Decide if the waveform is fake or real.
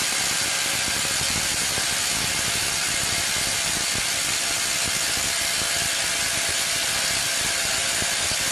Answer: real